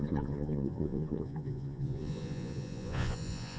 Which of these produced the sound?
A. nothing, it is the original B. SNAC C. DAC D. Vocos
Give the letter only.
D